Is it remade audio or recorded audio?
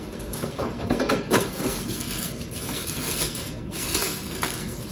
remade